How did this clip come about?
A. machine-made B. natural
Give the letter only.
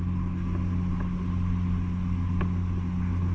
B